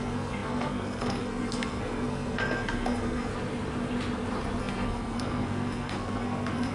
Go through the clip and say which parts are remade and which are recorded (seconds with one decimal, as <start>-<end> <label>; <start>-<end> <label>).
0.0-3.3 remade; 3.3-4.6 recorded; 4.6-6.7 remade